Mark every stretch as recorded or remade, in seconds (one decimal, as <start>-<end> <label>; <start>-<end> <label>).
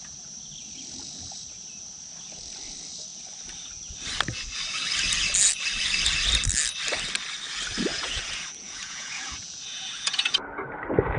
0.0-7.9 recorded; 7.9-10.4 remade; 10.4-11.2 recorded